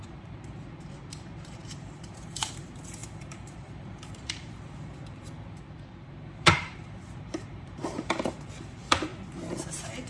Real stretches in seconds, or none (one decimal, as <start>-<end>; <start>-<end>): 9.1-9.7

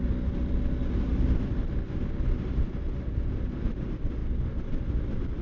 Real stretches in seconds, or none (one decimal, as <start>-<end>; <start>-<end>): 0.0-5.4

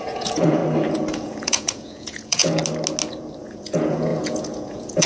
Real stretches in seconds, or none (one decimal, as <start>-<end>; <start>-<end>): 0.6-1.1; 2.6-3.4

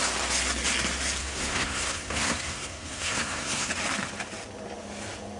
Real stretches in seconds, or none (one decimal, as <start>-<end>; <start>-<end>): 0.0-1.2; 3.7-5.4